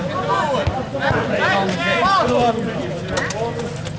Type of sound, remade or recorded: recorded